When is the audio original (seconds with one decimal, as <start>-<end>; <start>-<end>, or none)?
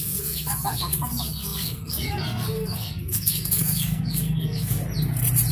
4.8-5.5